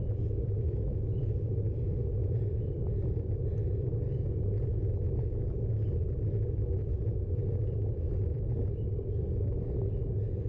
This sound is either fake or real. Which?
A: fake